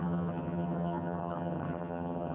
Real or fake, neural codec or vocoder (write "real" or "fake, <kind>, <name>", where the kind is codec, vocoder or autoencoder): fake, vocoder, HiFi-GAN